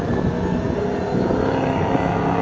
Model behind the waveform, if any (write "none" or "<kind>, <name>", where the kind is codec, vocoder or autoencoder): none